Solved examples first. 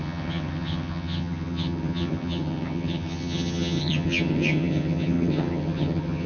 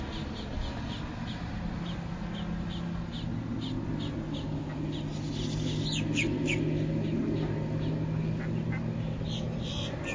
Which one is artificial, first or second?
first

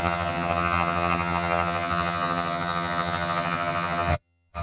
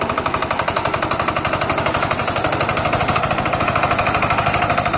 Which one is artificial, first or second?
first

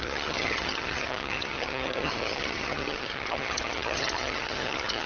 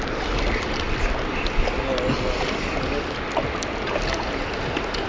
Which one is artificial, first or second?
first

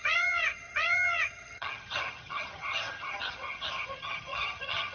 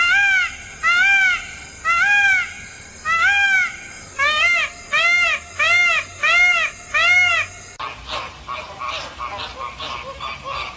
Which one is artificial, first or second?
first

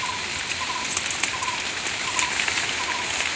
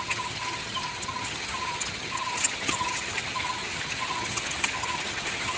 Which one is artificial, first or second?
second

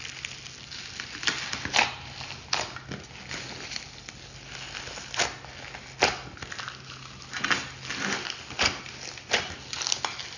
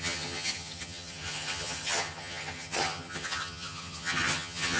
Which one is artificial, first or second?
second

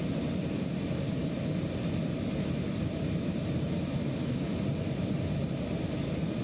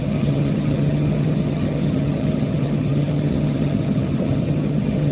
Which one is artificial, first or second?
second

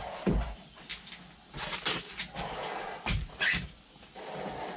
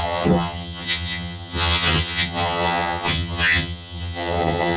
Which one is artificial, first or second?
second